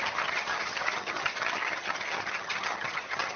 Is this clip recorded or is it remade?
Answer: remade